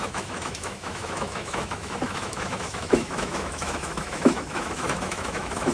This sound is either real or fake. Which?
fake